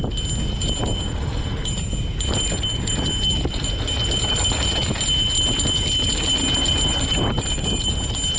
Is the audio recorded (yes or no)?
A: yes